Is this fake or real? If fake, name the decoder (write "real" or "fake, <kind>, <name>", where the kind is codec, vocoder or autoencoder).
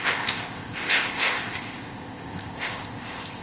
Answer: fake, codec, ZipCodec